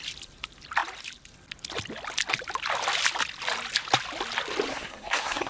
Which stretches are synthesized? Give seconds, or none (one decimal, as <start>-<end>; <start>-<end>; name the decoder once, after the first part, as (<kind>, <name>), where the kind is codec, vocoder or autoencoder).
4.7-5.5 (codec, SNAC)